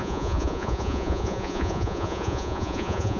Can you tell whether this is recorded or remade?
remade